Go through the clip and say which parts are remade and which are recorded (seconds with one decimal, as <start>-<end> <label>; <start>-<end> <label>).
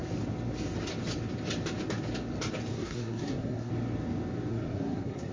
0.0-2.7 recorded; 2.7-3.7 remade; 3.7-4.5 recorded; 4.5-5.3 remade